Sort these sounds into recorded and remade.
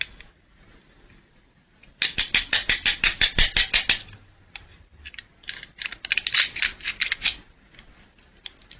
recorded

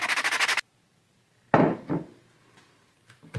recorded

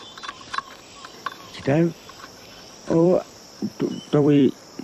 remade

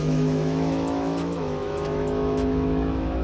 remade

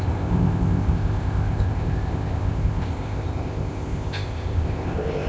remade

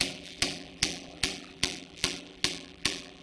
remade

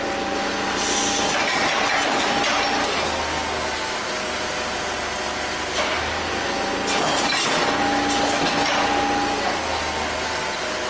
recorded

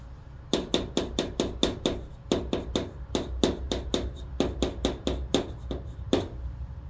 recorded